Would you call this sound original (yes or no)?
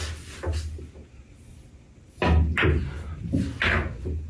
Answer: yes